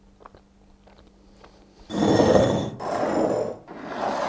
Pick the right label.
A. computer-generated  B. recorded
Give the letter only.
B